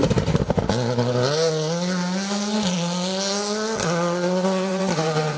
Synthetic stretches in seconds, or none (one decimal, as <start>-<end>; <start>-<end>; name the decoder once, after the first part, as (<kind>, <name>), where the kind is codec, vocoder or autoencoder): 4.7-5.4 (vocoder, BigVGAN v2)